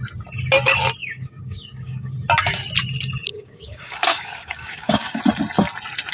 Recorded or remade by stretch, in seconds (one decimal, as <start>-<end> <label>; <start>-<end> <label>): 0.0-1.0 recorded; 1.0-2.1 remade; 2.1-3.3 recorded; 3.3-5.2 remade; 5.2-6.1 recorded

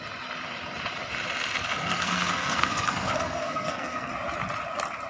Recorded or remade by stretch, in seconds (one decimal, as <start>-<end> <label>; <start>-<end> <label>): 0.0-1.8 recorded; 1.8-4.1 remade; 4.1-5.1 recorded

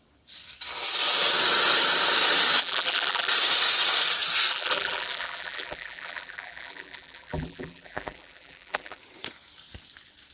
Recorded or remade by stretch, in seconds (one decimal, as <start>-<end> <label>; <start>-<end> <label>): 0.0-2.6 recorded; 2.6-3.3 remade; 3.3-4.5 recorded; 4.5-9.0 remade; 9.0-10.3 recorded

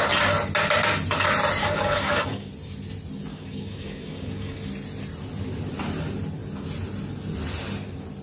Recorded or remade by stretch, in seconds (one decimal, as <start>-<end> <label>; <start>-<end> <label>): 0.0-1.6 recorded; 1.6-2.5 remade; 2.5-3.3 recorded; 3.3-4.7 remade; 4.7-8.2 recorded

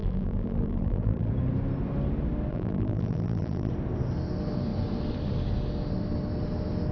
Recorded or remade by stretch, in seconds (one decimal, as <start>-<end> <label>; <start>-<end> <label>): 0.0-1.3 remade; 1.3-2.5 recorded; 2.5-3.7 remade; 3.7-6.9 recorded